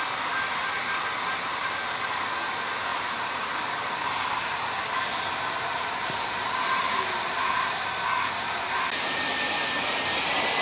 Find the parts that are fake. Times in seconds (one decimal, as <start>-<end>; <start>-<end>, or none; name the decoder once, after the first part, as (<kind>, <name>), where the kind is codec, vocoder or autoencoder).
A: 1.5-2.2 (vocoder, BigVGAN v2); 2.9-8.0